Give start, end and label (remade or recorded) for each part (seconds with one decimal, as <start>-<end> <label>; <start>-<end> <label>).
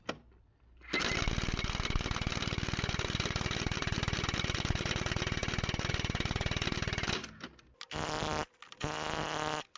0.0-9.8 recorded